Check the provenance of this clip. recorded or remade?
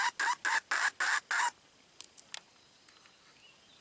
recorded